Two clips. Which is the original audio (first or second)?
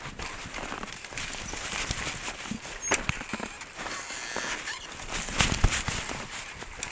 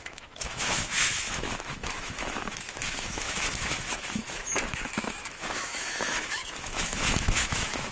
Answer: first